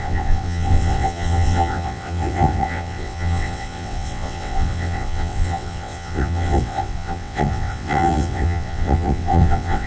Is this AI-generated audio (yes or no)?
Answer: yes